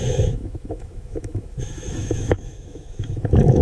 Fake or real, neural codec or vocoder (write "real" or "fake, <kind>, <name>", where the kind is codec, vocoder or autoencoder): fake, autoencoder, DAC-VAE